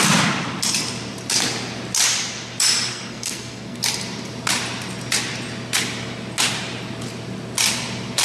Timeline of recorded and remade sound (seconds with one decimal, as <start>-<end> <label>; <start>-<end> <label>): 0.0-2.9 recorded; 2.9-3.8 remade; 3.8-8.2 recorded